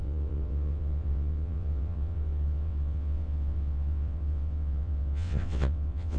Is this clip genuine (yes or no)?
no